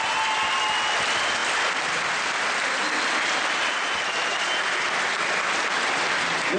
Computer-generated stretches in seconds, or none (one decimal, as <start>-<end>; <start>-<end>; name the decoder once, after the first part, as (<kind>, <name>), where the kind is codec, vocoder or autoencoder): none